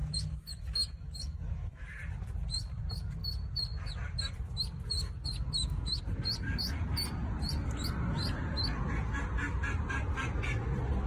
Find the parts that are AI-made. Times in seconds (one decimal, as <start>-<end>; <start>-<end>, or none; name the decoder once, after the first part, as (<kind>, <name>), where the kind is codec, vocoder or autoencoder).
0.0-1.9 (autoencoder, DAC-VAE)